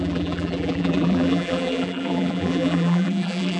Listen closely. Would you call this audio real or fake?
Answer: fake